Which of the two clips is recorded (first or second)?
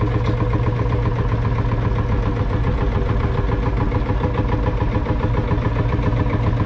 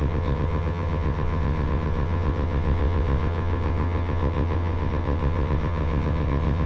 first